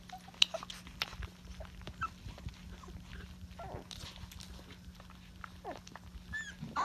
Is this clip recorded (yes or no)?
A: yes